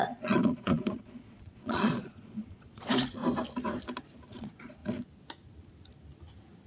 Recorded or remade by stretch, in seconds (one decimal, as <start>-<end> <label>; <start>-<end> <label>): 0.0-3.2 remade; 3.2-4.3 recorded; 4.3-4.8 remade; 4.8-6.7 recorded